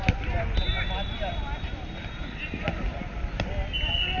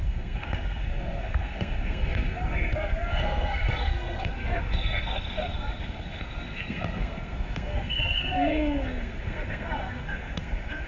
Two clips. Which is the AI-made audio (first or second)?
second